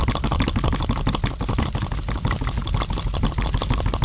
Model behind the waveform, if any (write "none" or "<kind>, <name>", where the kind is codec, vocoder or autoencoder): none